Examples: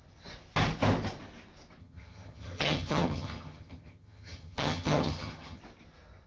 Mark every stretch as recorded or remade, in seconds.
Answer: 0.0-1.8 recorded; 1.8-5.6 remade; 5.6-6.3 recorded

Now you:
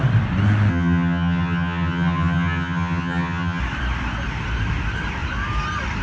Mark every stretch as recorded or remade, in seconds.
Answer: 0.0-0.7 recorded; 0.7-3.6 remade; 3.6-6.0 recorded

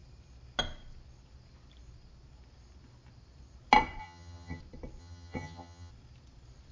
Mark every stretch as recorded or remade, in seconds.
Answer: 0.0-4.0 recorded; 4.0-4.6 remade; 4.6-5.0 recorded; 5.0-5.9 remade; 5.9-6.7 recorded

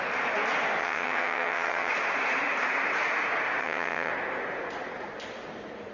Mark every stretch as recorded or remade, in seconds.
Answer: 0.0-0.8 recorded; 0.8-1.9 remade; 1.9-3.6 recorded; 3.6-4.1 remade; 4.1-5.9 recorded

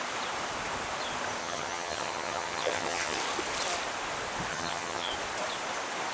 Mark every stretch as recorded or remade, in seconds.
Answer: 0.0-1.4 recorded; 1.4-3.2 remade; 3.2-4.5 recorded; 4.5-5.1 remade; 5.1-6.1 recorded

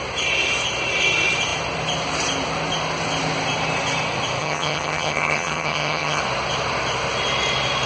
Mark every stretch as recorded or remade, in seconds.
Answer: 0.0-4.4 recorded; 4.4-6.2 remade; 6.2-7.9 recorded

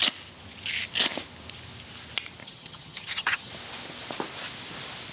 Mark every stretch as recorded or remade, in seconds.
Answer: 0.0-2.4 recorded; 2.4-3.5 remade; 3.5-5.1 recorded